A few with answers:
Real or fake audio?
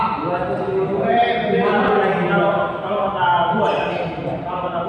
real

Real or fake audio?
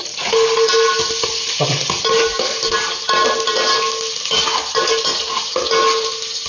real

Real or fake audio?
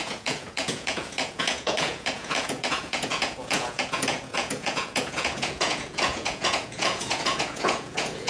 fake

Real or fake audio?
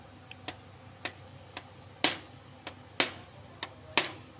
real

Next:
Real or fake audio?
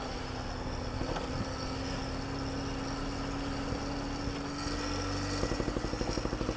real